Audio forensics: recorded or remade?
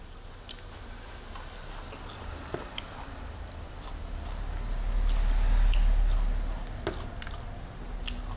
recorded